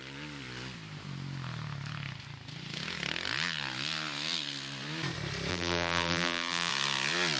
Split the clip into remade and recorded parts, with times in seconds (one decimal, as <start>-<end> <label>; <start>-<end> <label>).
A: 0.0-5.5 recorded; 5.5-6.7 remade; 6.7-7.4 recorded